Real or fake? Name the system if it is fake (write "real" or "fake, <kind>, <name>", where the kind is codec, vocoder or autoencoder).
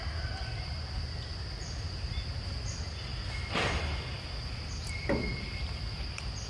real